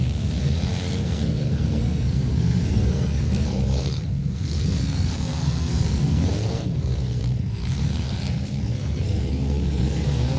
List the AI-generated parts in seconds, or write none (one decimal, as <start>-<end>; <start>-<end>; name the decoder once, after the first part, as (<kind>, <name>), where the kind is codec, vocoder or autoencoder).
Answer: 0.0-10.4 (codec, SNAC)